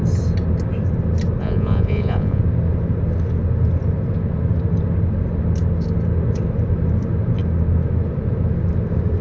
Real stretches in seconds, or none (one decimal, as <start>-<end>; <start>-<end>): 0.0-1.4; 2.4-9.2